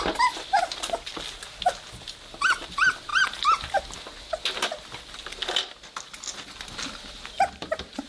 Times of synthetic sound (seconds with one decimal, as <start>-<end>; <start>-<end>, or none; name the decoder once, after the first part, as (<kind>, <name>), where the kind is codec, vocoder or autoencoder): none